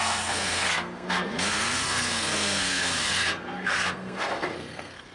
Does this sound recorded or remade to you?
remade